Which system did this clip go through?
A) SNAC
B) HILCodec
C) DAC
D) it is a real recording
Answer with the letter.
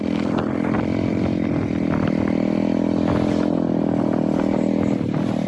D